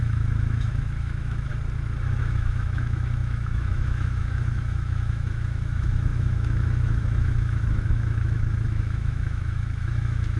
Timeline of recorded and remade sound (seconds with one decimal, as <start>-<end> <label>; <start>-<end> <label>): 0.0-1.5 remade; 1.5-2.2 recorded; 2.2-10.4 remade